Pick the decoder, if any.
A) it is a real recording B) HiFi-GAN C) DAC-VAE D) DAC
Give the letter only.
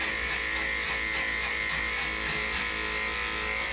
A